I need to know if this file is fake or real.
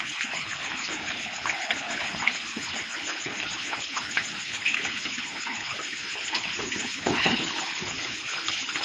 fake